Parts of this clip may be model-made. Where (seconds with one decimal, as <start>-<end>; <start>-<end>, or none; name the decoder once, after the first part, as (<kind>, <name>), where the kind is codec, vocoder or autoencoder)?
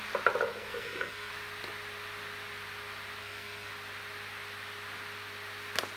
0.5-1.3 (codec, SNAC); 3.2-3.7